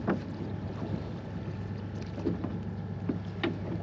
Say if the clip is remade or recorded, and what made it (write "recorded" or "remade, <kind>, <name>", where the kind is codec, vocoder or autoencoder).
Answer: recorded